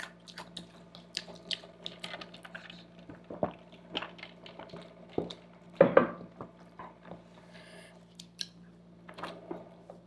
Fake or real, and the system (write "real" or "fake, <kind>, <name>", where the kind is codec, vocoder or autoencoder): real